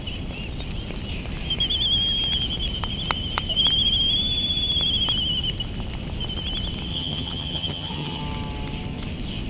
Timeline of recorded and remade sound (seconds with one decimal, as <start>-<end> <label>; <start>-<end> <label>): 0.0-6.9 recorded; 6.9-8.2 remade; 8.2-9.5 recorded

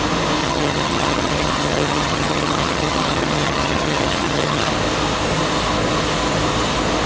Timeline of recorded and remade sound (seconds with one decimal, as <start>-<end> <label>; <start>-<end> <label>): 0.0-0.4 recorded; 0.4-4.7 remade; 4.7-7.1 recorded

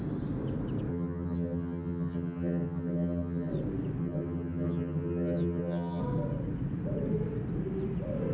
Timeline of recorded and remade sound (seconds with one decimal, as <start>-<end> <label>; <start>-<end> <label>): 0.0-0.9 recorded; 0.9-3.5 remade; 3.5-4.0 recorded; 4.0-6.0 remade; 6.0-8.3 recorded

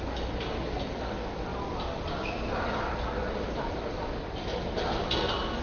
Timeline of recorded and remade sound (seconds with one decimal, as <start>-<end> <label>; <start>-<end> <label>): 0.0-5.6 recorded

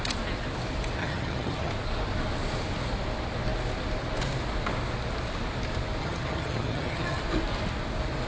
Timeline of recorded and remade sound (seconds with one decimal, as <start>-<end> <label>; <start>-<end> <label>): 0.0-1.0 recorded; 1.0-1.7 remade; 1.7-6.0 recorded; 6.0-7.2 remade; 7.2-8.3 recorded